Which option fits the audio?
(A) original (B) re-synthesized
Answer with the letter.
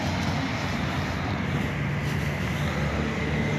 A